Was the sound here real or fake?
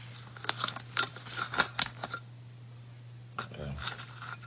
real